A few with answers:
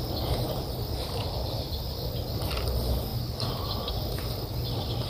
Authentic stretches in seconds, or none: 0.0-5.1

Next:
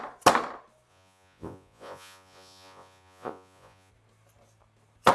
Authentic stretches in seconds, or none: 0.0-0.9; 3.9-5.1

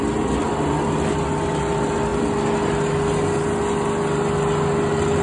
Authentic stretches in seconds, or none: 0.0-5.2

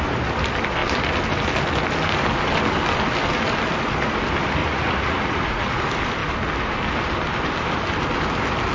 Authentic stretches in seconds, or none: 0.0-4.6; 5.8-8.7

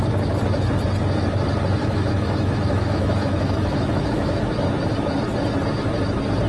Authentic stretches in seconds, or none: 0.0-1.8; 4.4-6.5